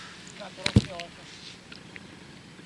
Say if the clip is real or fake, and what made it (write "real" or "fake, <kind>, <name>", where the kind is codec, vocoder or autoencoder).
real